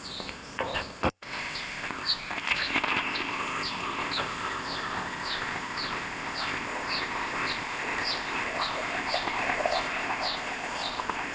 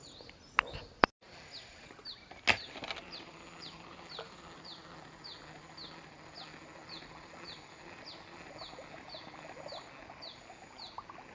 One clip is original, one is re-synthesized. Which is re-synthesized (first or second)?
first